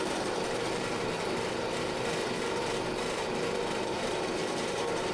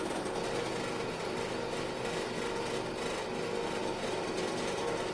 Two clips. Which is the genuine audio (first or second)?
second